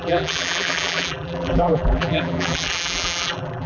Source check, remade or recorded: remade